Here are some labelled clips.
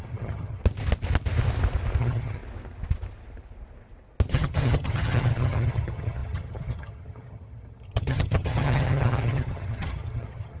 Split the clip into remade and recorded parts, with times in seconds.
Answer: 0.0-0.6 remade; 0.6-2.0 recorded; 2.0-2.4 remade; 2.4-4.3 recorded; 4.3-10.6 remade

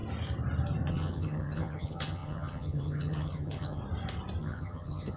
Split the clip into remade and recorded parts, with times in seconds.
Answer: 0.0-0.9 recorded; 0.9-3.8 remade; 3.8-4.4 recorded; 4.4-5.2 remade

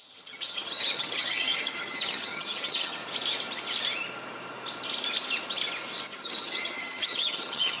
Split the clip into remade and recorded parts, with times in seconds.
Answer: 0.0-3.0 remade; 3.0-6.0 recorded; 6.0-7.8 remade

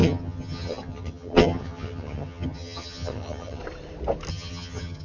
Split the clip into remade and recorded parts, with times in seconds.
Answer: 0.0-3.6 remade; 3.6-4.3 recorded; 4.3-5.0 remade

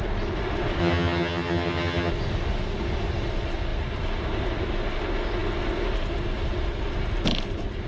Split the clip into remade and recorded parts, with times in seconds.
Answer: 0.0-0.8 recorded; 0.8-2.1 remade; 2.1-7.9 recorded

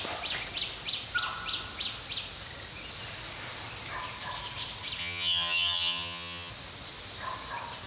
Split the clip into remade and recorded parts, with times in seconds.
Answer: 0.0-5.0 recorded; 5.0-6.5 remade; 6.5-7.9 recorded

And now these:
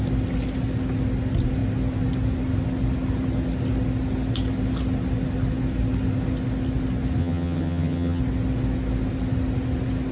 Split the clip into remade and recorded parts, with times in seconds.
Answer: 0.0-7.2 recorded; 7.2-8.2 remade; 8.2-10.1 recorded

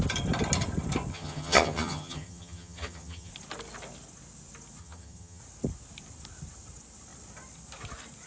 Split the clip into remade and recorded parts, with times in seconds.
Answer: 0.0-1.1 recorded; 1.1-3.3 remade; 3.3-4.8 recorded; 4.8-5.4 remade; 5.4-8.3 recorded